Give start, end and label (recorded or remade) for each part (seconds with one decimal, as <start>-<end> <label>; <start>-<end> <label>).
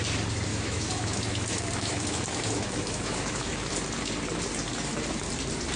0.0-0.5 recorded; 0.5-3.7 remade; 3.7-5.8 recorded